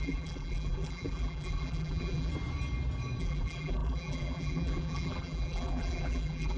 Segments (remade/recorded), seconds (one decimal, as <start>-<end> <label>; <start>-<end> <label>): 0.0-2.3 remade; 2.3-3.2 recorded; 3.2-6.6 remade